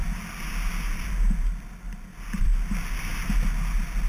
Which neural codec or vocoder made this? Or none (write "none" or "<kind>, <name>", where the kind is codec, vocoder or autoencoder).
none